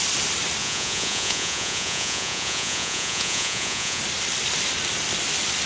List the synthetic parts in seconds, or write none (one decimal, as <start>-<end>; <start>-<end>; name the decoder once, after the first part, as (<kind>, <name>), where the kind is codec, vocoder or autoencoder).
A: 0.6-4.0 (vocoder, Vocos)